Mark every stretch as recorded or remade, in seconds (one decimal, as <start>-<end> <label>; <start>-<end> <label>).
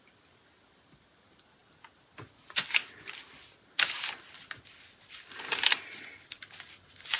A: 0.0-7.2 recorded